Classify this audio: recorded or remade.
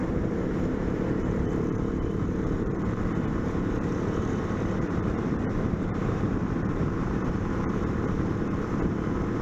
remade